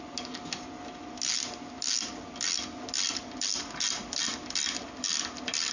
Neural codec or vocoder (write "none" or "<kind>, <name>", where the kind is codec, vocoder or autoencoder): none